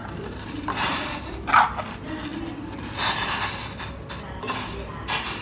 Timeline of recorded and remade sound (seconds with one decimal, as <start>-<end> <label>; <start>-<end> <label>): 0.0-1.1 remade; 1.1-5.4 recorded

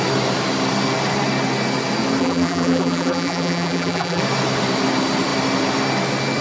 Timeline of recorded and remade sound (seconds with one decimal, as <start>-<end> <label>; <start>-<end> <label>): 0.0-2.2 recorded; 2.2-4.2 remade; 4.2-6.4 recorded

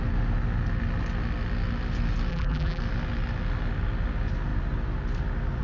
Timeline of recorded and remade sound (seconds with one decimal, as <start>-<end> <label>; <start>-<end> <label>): 0.0-2.3 recorded; 2.3-2.8 remade; 2.8-5.6 recorded

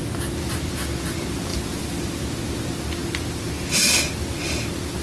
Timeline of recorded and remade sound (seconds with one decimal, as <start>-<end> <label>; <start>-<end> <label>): 0.0-1.5 recorded; 1.5-2.2 remade; 2.2-5.0 recorded

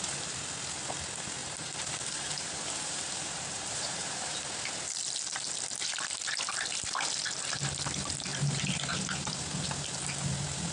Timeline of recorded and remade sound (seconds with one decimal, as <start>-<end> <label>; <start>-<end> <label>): 0.0-1.4 recorded; 1.4-4.5 remade; 4.5-10.7 recorded

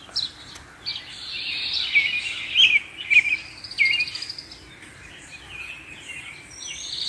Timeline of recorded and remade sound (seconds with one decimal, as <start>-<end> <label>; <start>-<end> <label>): 0.0-0.9 recorded; 0.9-1.6 remade; 1.6-5.3 recorded; 5.3-6.3 remade; 6.3-7.1 recorded